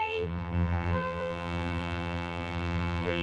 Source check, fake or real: fake